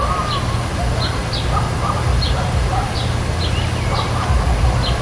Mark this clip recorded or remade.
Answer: recorded